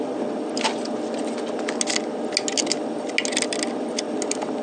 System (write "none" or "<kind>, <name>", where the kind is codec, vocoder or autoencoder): none